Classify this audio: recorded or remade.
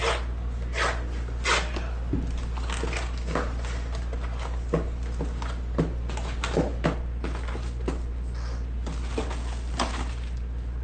recorded